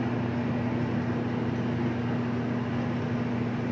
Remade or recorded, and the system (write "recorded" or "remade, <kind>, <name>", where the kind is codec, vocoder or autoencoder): recorded